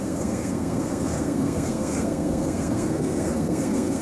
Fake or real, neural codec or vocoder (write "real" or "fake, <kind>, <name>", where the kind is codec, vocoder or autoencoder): fake, codec, SNAC